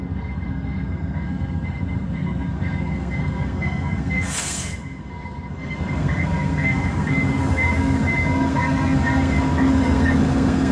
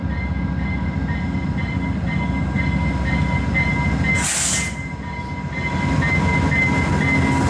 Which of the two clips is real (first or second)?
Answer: second